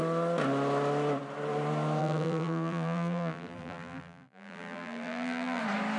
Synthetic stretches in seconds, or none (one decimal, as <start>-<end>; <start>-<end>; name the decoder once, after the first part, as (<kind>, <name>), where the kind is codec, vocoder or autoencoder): 2.0-5.6 (vocoder, BigVGAN v2)